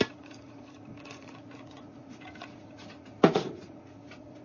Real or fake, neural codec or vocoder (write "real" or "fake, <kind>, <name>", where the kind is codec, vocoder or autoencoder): fake, vocoder, Vocos